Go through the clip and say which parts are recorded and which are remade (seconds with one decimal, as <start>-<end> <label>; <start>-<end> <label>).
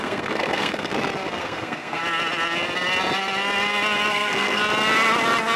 0.0-0.9 remade; 0.9-1.4 recorded; 1.4-2.0 remade; 2.0-4.1 recorded; 4.1-4.6 remade; 4.6-5.6 recorded